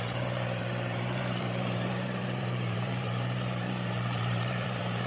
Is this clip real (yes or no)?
no